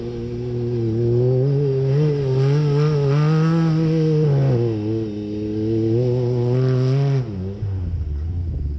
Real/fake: real